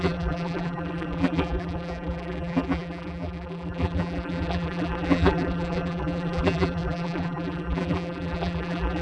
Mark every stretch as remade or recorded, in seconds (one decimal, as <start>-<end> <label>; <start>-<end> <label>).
0.0-9.0 remade